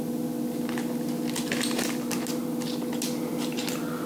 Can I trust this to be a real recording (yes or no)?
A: yes